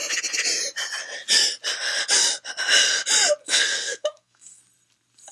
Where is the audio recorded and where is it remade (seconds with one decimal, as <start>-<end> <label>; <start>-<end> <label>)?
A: 0.0-3.4 recorded; 3.4-4.6 remade; 4.6-5.3 recorded